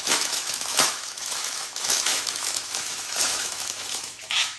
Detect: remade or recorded remade